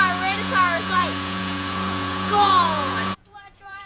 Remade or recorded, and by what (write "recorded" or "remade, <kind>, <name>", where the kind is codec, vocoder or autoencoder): remade, vocoder, Vocos